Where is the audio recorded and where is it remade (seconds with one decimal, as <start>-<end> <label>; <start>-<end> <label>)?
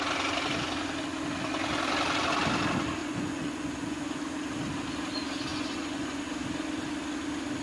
0.0-3.0 recorded; 3.0-4.2 remade; 4.2-5.5 recorded; 5.5-6.2 remade; 6.2-7.6 recorded